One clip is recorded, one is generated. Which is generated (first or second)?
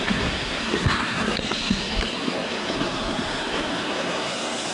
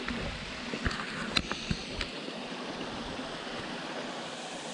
first